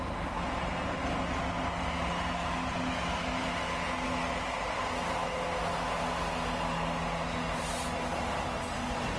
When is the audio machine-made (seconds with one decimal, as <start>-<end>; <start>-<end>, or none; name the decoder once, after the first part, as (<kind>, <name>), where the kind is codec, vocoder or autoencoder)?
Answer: none